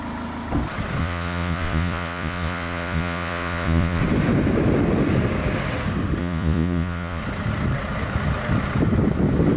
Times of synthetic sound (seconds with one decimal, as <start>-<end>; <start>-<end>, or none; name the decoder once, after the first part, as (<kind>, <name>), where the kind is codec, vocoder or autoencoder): 1.0-4.0 (vocoder, Vocos); 6.2-7.2